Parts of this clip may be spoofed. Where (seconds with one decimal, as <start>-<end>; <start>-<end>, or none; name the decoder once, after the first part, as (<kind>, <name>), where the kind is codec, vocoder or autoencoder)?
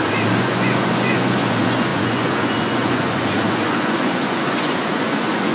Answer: 0.0-5.5 (vocoder, Vocos)